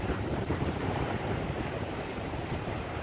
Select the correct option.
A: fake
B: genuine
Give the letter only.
A